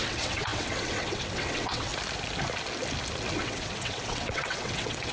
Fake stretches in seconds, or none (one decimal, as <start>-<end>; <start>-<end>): 0.0-1.9; 3.4-5.1